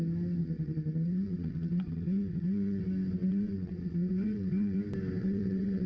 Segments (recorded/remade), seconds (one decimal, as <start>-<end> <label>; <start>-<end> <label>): 0.0-0.4 recorded; 0.4-2.8 remade; 2.8-3.2 recorded; 3.2-4.8 remade; 4.8-5.2 recorded; 5.2-5.9 remade